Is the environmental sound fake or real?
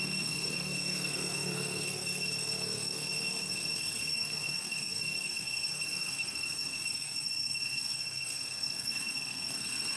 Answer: fake